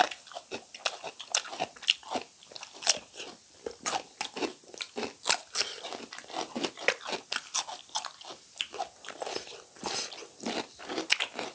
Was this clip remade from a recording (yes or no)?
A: no